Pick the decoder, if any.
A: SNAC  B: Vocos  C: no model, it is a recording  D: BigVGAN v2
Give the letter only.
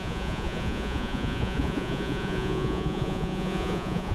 B